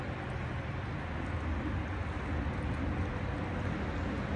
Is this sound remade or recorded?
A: recorded